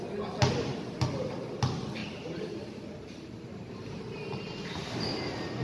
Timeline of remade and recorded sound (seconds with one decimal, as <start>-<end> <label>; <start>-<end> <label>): 0.0-2.0 recorded; 2.0-5.6 remade